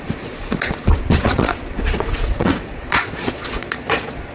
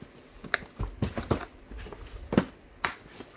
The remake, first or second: first